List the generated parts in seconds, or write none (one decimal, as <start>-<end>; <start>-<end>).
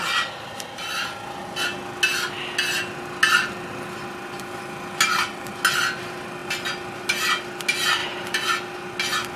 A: 8.0-8.5